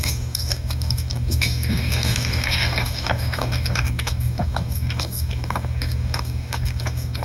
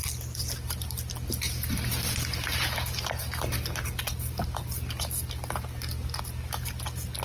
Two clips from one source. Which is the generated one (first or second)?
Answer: first